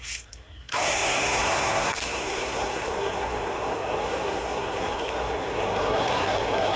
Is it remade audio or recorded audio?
remade